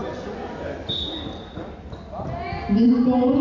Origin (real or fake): real